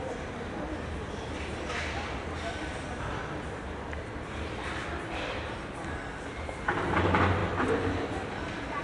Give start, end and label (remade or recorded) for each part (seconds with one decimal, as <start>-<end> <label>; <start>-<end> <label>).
0.0-8.8 recorded